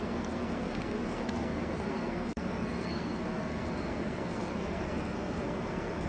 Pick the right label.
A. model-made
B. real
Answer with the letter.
A